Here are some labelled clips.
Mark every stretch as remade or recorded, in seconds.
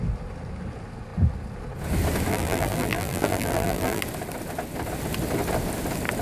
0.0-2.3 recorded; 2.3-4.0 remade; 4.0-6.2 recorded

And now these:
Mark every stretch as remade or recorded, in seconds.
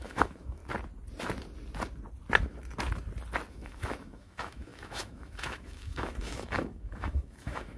0.0-0.6 remade; 0.6-3.5 recorded; 3.5-7.8 remade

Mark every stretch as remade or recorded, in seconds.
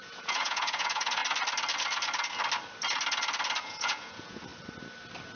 0.0-1.2 remade; 1.2-3.6 recorded; 3.6-4.5 remade; 4.5-5.4 recorded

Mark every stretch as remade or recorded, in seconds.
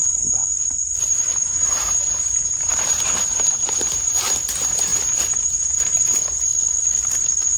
0.0-0.4 remade; 0.4-1.4 recorded; 1.4-6.5 remade; 6.5-7.6 recorded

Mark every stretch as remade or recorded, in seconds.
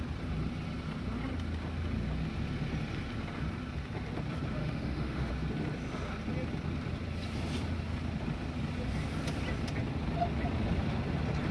0.0-4.6 recorded; 4.6-5.3 remade; 5.3-11.5 recorded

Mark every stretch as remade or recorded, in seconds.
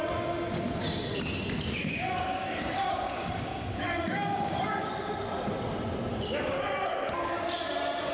0.0-1.8 recorded; 1.8-4.9 remade; 4.9-6.1 recorded; 6.1-6.9 remade; 6.9-8.1 recorded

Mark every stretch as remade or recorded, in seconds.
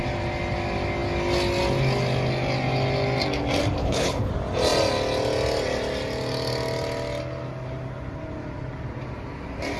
0.0-3.8 recorded; 3.8-4.3 remade; 4.3-9.8 recorded